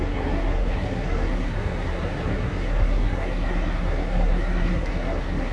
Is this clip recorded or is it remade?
remade